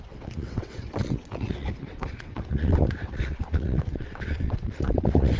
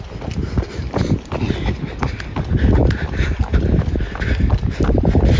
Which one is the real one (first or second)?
second